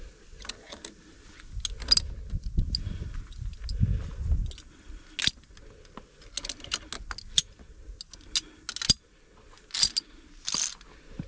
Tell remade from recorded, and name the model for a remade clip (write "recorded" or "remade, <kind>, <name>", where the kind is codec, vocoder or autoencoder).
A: recorded